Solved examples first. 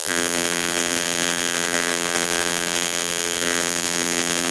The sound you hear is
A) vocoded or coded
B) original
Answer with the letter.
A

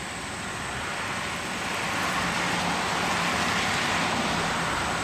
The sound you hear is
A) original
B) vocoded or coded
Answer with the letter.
A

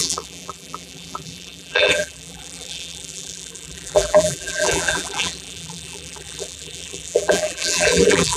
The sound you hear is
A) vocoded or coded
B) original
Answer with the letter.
A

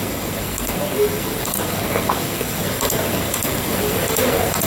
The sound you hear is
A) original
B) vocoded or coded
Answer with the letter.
B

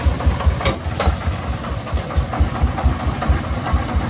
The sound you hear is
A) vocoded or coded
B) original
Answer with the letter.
B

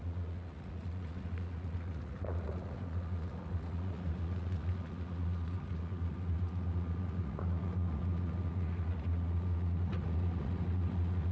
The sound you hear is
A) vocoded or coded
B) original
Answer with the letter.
A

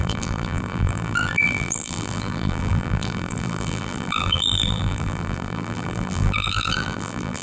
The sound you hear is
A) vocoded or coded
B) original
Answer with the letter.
A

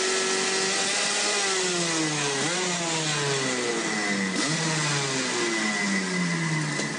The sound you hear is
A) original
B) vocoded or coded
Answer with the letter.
A